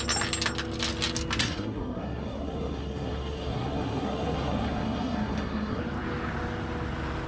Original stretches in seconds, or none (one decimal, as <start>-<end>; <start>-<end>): 0.0-1.4; 5.8-7.3